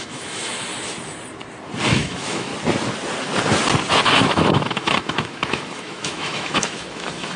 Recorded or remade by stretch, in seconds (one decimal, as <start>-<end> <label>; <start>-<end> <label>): 0.0-0.7 remade; 0.7-1.9 recorded; 1.9-2.5 remade; 2.5-4.2 recorded; 4.2-7.4 remade